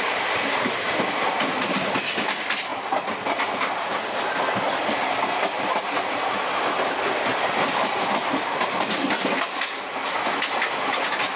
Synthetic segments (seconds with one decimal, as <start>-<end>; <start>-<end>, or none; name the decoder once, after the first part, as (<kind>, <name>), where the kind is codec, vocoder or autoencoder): none